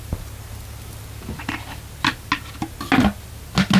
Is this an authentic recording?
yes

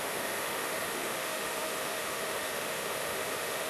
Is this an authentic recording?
no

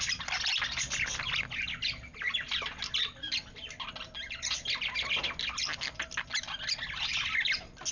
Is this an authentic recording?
yes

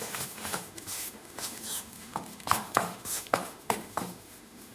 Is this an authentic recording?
no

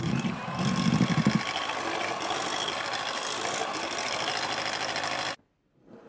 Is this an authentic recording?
yes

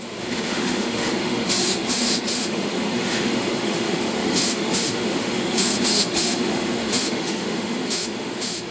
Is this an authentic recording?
no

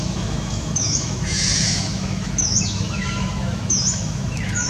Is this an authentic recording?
no